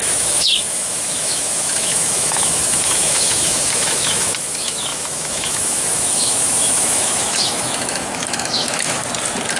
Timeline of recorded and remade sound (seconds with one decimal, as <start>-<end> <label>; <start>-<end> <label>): 0.0-9.0 remade; 9.0-9.6 recorded

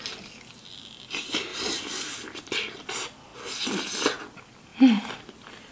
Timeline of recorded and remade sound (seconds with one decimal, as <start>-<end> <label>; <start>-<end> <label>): 0.0-5.7 recorded

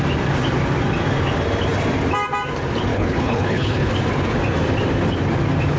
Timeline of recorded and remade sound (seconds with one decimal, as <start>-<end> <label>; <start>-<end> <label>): 0.0-2.9 recorded; 2.9-3.9 remade; 3.9-5.8 recorded

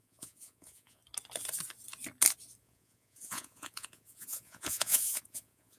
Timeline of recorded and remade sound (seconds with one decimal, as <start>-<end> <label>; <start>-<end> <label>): 0.0-1.0 remade; 1.0-2.6 recorded; 2.6-5.8 remade

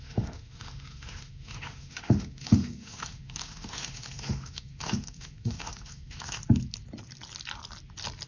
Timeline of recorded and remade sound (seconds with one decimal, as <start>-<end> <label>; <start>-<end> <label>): 0.0-6.4 remade; 6.4-8.3 recorded

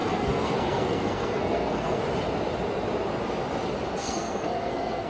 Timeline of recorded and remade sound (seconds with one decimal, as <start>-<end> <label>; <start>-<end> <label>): 0.0-2.0 remade; 2.0-4.0 recorded; 4.0-5.1 remade

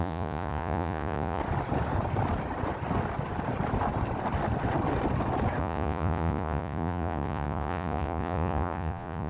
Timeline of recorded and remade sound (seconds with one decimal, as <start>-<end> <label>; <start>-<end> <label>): 0.0-1.4 remade; 1.4-5.6 recorded; 5.6-9.3 remade

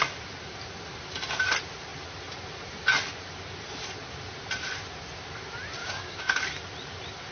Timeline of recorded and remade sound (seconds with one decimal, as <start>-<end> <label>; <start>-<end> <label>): 0.0-5.8 recorded; 5.8-6.4 remade; 6.4-7.3 recorded